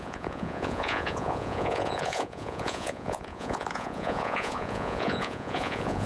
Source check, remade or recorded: remade